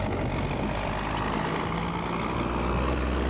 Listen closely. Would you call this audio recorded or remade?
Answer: recorded